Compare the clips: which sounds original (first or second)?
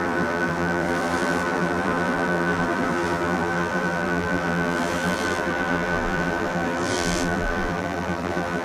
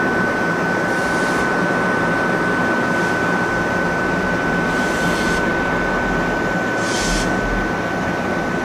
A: second